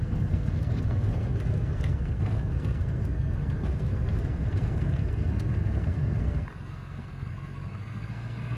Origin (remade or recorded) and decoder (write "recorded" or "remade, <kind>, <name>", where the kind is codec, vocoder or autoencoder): remade, codec, SNAC